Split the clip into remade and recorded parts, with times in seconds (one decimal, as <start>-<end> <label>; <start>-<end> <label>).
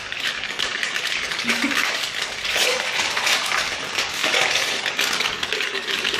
0.0-6.2 remade